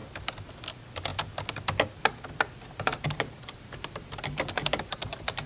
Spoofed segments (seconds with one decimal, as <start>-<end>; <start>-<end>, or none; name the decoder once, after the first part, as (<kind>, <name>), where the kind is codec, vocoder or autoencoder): 2.9-5.5 (vocoder, BigVGAN v2)

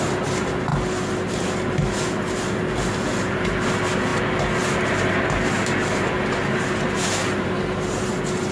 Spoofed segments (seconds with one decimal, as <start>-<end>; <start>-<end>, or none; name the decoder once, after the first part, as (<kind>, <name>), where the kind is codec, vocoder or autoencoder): none